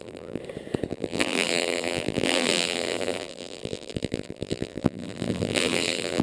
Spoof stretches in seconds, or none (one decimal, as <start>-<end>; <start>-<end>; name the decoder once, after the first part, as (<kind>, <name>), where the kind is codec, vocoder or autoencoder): 0.0-0.4 (vocoder, BigVGAN v2); 0.9-6.2